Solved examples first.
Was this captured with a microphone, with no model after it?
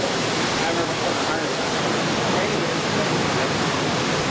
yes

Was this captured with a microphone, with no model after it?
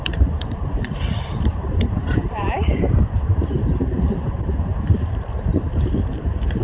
no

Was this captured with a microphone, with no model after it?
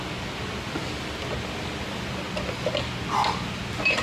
yes